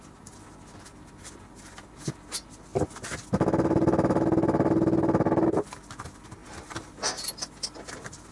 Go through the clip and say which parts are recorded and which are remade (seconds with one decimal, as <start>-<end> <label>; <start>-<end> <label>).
0.0-8.3 recorded